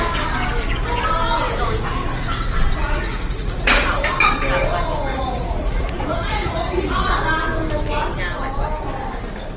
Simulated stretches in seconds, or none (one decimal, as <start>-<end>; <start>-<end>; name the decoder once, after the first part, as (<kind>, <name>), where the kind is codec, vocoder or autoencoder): 2.8-4.1 (vocoder, Vocos); 5.1-7.2